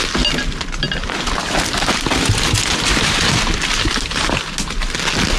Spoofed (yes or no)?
no